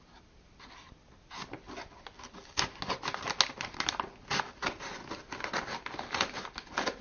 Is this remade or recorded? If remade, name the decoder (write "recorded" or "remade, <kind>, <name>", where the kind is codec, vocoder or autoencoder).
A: recorded